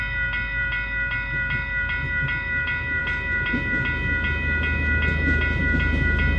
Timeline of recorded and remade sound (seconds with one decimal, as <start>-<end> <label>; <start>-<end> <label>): 0.0-6.4 recorded